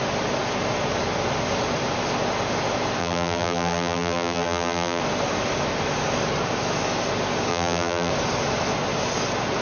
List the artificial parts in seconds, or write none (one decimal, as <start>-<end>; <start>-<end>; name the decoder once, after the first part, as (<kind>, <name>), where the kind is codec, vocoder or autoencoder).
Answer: 3.0-5.0 (vocoder, BigVGAN v2); 7.5-8.1